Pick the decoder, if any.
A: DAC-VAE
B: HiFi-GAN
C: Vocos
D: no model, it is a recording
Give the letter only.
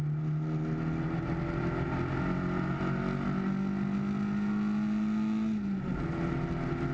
D